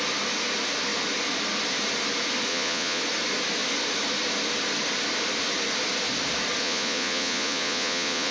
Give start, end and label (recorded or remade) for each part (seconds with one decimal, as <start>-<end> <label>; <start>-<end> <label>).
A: 0.0-2.5 recorded; 2.5-3.0 remade; 3.0-6.6 recorded; 6.6-8.3 remade